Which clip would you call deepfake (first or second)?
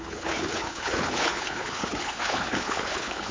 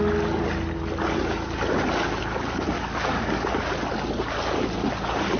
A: first